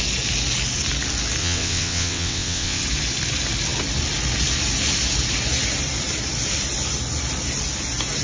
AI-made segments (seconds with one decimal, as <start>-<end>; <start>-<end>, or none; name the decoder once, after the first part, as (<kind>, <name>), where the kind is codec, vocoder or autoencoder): 1.4-2.8 (vocoder, WaveNeXt)